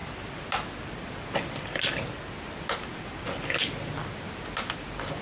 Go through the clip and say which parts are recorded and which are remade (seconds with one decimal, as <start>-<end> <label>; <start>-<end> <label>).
0.0-5.2 recorded

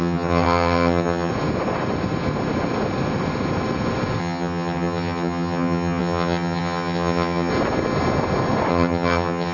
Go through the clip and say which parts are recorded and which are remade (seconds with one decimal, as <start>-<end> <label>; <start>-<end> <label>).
0.0-1.3 remade; 1.3-4.2 recorded; 4.2-7.5 remade; 7.5-8.7 recorded; 8.7-9.5 remade

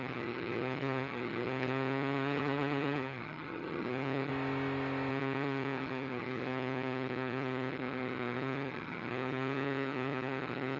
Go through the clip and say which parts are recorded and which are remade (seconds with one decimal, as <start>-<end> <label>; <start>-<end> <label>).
0.0-4.3 remade; 4.3-5.1 recorded; 5.1-10.8 remade

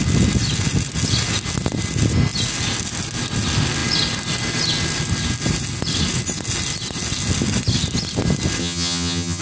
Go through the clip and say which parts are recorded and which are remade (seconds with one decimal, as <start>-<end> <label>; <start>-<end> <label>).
0.0-8.6 recorded; 8.6-9.4 remade

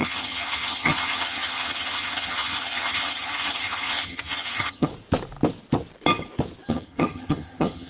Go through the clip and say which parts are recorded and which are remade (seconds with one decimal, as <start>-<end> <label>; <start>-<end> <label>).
0.0-4.9 remade; 4.9-6.7 recorded; 6.7-7.9 remade

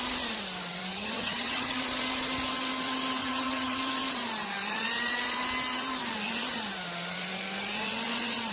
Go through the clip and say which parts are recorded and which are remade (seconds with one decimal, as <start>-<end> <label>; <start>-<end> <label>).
0.0-0.9 recorded; 0.9-1.8 remade; 1.8-3.2 recorded; 3.2-3.8 remade; 3.8-8.5 recorded